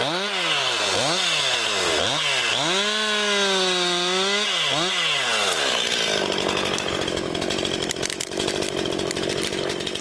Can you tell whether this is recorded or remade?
recorded